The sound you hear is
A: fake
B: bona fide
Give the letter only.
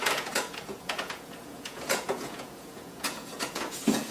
A